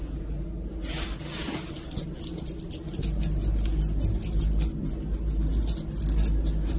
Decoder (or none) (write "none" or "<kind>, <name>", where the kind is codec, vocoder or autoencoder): none